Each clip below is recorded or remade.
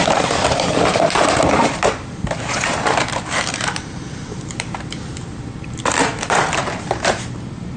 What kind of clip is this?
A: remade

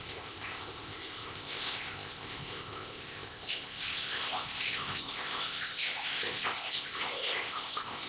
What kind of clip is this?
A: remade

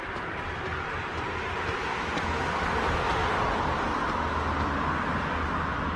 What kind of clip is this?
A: recorded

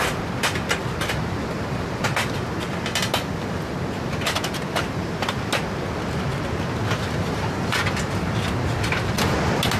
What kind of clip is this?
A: recorded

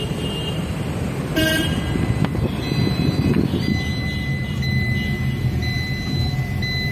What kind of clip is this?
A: recorded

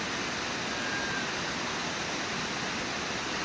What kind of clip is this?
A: recorded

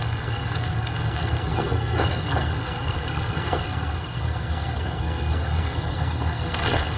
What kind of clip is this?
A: remade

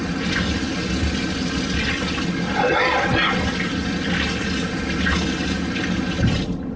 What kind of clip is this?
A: recorded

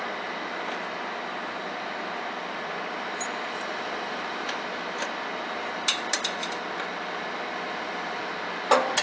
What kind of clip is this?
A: recorded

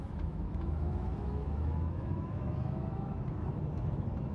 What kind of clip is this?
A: remade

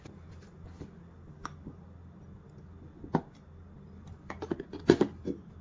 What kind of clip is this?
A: recorded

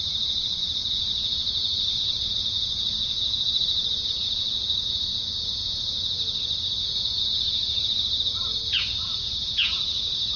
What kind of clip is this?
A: remade